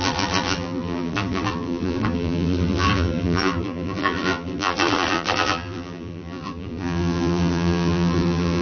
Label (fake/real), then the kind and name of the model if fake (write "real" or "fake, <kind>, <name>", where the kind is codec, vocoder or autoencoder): fake, vocoder, BigVGAN v2